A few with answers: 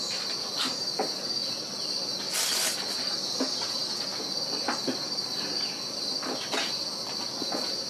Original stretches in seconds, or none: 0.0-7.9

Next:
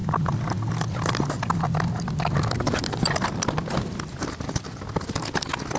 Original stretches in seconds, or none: 1.6-5.8

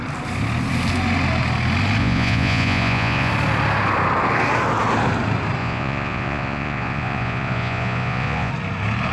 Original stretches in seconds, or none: 0.0-2.0; 3.3-5.6; 8.5-9.1

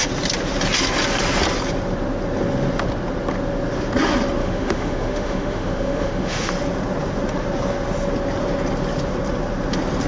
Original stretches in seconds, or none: 0.0-4.4; 6.5-10.1

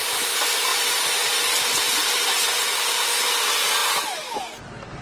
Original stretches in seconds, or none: 0.0-5.0

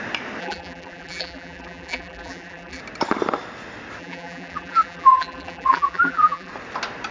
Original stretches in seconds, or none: 0.0-0.4; 2.8-4.0; 6.5-7.1

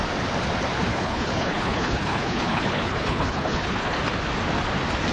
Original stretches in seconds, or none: 0.0-0.9; 4.0-5.1

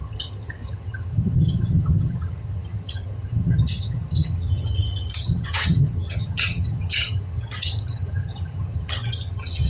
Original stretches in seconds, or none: none